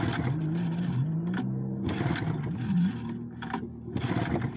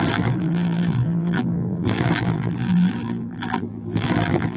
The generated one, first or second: second